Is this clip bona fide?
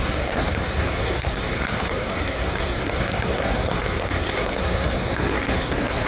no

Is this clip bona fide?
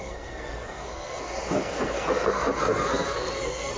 no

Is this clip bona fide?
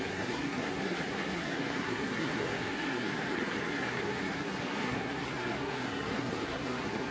no